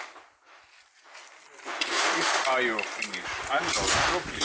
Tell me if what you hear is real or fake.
real